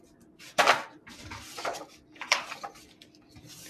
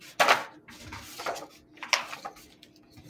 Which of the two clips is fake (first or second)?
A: first